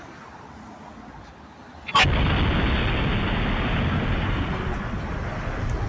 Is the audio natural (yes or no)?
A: yes